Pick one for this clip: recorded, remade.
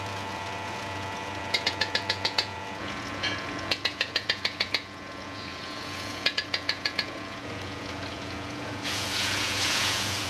remade